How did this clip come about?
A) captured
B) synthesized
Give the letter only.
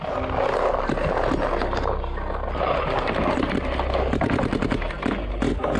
A